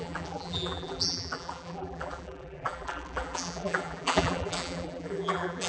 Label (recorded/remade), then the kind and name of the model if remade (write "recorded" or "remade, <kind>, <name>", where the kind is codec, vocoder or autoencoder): remade, vocoder, BigVGAN v2